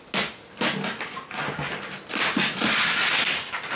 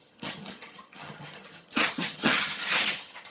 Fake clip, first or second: second